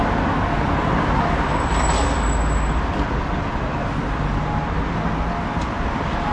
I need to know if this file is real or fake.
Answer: real